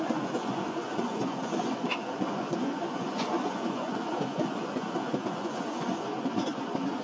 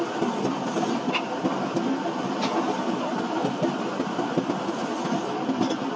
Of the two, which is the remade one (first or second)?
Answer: first